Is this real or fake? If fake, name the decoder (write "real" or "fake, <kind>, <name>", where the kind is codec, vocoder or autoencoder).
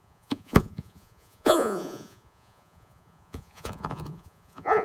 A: fake, vocoder, Vocos